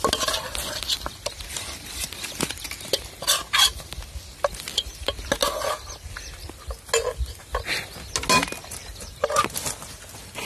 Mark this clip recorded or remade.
recorded